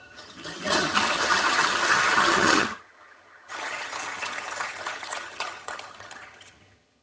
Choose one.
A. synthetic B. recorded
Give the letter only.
A